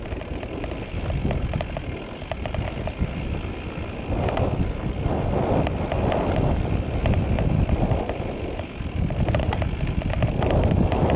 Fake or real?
real